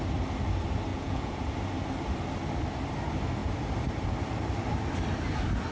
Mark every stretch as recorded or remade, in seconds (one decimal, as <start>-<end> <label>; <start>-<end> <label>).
0.0-0.9 recorded; 0.9-1.5 remade; 1.5-5.7 recorded